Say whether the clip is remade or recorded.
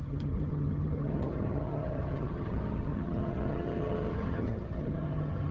remade